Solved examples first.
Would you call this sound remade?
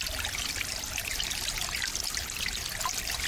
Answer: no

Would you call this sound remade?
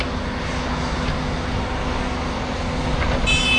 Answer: no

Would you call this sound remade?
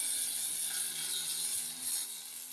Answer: no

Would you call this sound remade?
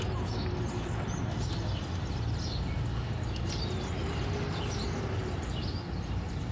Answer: no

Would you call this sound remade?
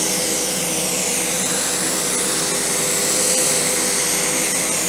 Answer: no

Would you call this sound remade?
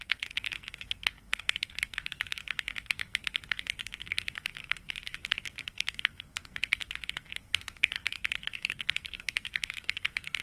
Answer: yes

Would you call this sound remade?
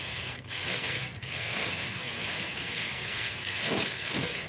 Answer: yes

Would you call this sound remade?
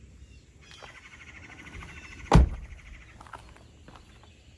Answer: no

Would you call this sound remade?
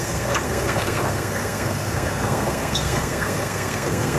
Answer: yes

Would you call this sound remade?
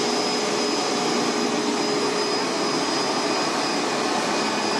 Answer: no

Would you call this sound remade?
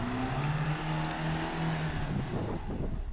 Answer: no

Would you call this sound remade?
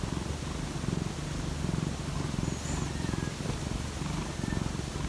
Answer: no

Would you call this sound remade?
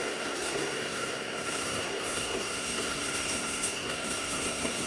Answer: yes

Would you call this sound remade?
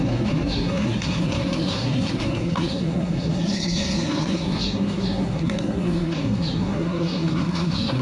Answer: yes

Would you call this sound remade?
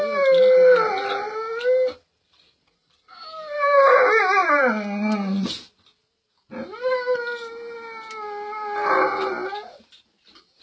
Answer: no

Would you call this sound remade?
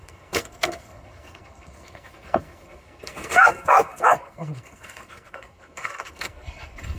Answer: yes